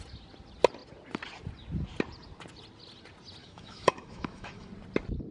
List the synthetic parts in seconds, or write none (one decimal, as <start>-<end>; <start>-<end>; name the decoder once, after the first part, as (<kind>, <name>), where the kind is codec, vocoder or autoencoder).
3.4-4.7 (autoencoder, DAC-VAE)